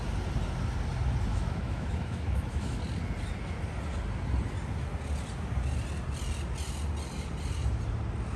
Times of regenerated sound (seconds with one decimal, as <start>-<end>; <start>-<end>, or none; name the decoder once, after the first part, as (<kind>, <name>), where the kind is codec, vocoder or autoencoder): 1.3-2.8 (autoencoder, DAC-VAE)